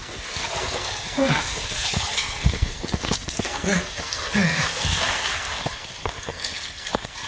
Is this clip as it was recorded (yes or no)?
no